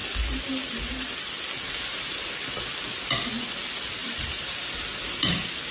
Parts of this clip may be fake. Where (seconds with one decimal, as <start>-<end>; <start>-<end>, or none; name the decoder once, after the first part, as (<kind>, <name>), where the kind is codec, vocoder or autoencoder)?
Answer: 4.0-4.8 (vocoder, BigVGAN v2)